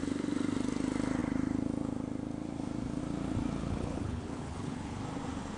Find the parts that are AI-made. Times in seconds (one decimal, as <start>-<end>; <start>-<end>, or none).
3.6-5.0